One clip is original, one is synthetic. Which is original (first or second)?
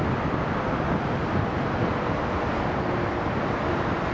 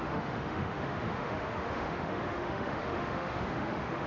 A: first